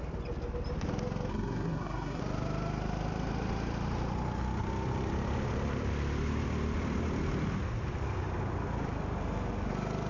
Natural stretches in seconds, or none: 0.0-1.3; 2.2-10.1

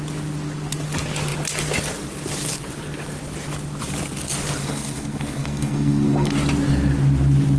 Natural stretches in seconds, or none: 0.0-4.6; 6.3-7.6

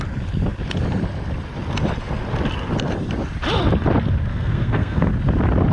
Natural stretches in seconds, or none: 0.0-4.3; 5.1-5.7

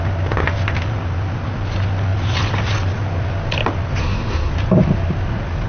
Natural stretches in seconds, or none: 0.0-4.0; 4.5-5.7

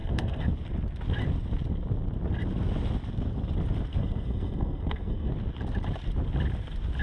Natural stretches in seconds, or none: 0.5-3.9; 5.3-7.0

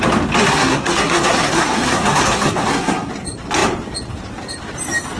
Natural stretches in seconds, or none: 0.0-0.4; 3.1-5.2

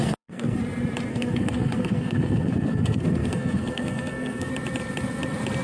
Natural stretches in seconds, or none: 0.6-1.1; 4.5-5.6

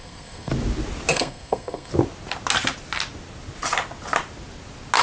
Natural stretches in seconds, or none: 0.5-1.1; 1.9-5.0